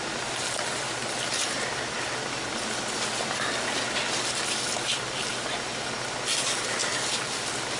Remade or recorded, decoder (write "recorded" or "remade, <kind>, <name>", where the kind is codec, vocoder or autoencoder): recorded